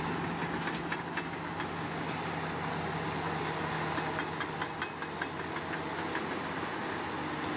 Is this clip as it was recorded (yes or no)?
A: yes